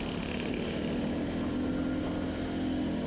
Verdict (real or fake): real